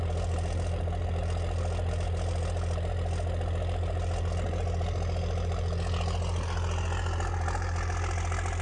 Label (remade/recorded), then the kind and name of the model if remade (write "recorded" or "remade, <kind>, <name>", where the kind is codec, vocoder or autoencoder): recorded